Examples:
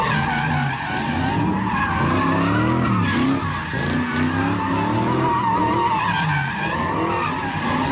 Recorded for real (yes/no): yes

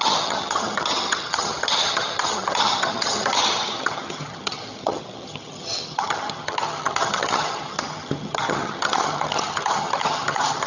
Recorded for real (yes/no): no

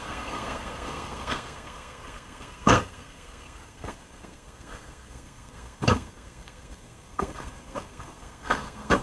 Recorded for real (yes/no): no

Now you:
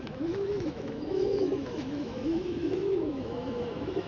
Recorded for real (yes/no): no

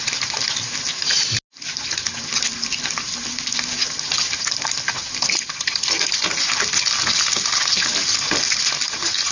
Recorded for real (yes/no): yes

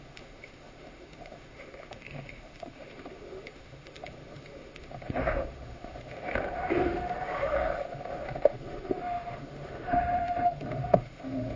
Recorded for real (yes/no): no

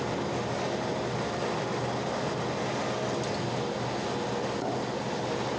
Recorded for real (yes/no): yes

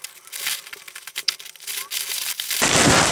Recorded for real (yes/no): yes